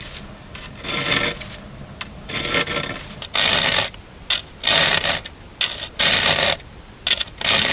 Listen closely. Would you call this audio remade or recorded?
recorded